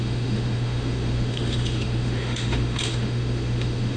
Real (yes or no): no